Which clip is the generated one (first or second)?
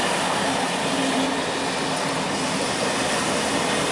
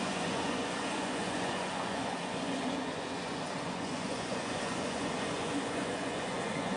second